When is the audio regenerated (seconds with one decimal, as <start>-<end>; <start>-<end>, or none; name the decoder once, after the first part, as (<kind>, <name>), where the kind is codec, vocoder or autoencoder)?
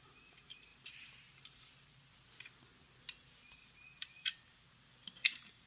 0.0-2.1 (vocoder, BigVGAN v2); 4.0-5.7